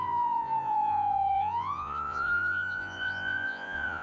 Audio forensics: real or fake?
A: fake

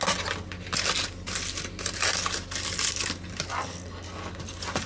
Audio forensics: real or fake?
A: real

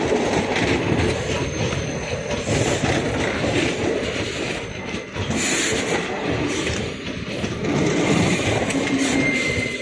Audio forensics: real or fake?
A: real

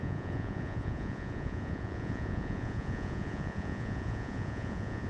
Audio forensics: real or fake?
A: fake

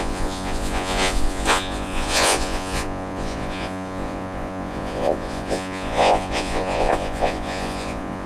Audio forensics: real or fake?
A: fake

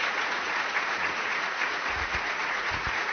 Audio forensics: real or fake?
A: fake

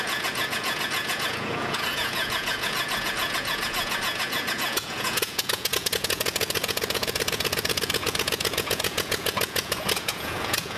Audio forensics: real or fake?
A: fake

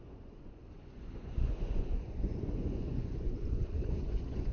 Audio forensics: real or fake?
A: fake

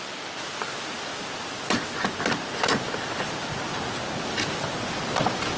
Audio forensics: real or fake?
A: real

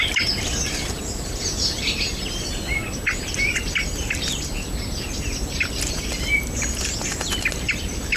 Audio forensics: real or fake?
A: real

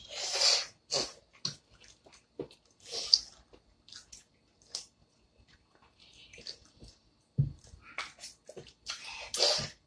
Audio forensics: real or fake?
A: real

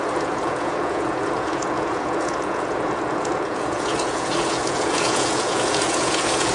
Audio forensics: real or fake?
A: fake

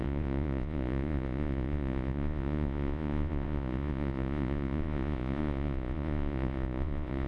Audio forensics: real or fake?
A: fake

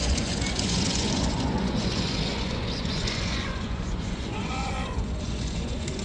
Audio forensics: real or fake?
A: fake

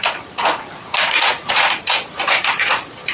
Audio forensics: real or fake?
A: fake